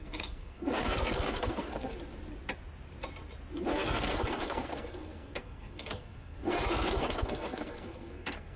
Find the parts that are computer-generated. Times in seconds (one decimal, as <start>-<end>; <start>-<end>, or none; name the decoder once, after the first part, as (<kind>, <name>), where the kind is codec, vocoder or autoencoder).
0.0-1.9 (codec, SNAC); 3.7-8.6